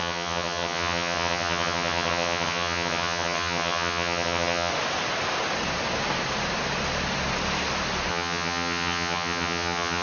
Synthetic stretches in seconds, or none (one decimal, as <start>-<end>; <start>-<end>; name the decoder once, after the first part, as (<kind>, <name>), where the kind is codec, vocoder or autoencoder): 0.0-4.7 (vocoder, HiFi-GAN); 8.1-10.0